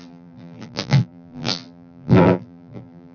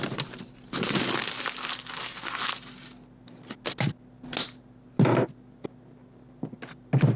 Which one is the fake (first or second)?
first